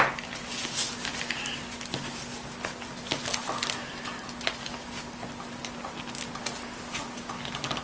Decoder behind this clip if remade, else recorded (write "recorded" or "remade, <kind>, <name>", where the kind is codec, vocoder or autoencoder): recorded